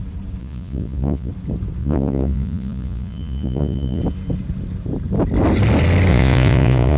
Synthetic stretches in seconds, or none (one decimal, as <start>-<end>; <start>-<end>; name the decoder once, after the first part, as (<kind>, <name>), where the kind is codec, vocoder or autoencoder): 0.4-1.3 (vocoder, Vocos); 1.8-4.0; 6.1-7.0